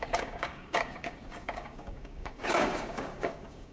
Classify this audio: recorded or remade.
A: remade